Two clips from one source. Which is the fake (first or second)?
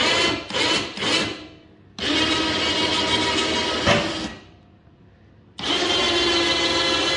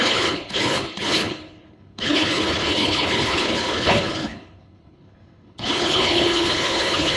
second